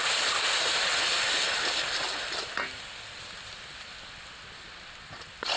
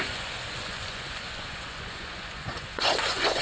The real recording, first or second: first